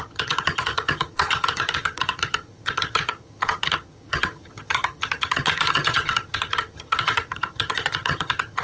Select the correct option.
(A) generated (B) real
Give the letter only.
A